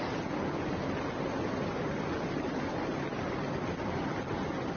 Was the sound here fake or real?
real